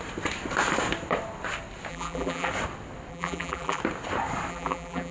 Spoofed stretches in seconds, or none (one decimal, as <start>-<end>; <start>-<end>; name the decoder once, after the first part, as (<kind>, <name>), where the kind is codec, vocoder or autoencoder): 1.9-2.5 (vocoder, BigVGAN v2); 3.1-3.8; 4.5-5.1